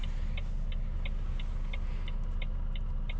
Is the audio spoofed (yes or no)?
no